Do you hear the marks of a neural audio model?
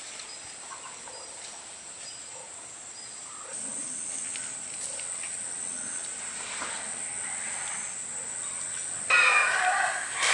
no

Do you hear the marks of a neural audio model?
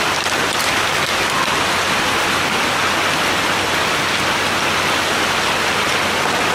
no